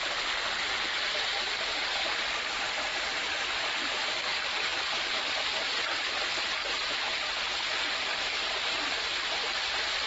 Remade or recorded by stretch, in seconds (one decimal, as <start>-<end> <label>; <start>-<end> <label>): 0.0-10.1 recorded